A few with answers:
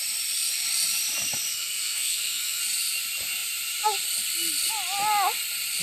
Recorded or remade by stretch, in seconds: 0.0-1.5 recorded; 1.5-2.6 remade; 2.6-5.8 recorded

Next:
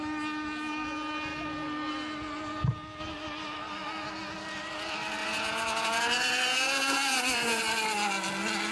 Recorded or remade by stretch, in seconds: 0.0-5.2 recorded; 5.2-7.6 remade; 7.6-8.7 recorded

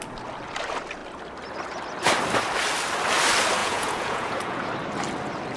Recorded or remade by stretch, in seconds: 0.0-3.6 recorded; 3.6-4.7 remade; 4.7-5.6 recorded

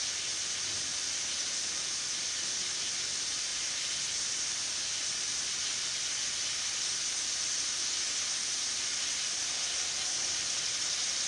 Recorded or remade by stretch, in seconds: 0.0-11.3 recorded

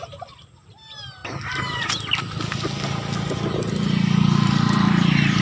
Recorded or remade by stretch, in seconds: 0.0-5.4 recorded